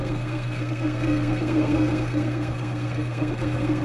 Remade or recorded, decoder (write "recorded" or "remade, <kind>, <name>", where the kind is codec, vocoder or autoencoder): remade, codec, SNAC